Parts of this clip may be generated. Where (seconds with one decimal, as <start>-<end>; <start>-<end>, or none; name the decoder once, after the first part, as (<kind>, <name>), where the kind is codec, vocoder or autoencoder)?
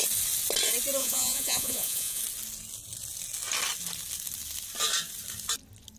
1.0-2.2 (vocoder, Vocos)